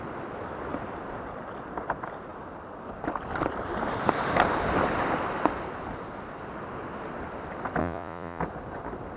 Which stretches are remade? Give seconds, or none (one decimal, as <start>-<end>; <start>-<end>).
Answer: 7.8-8.4